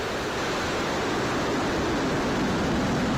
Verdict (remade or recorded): recorded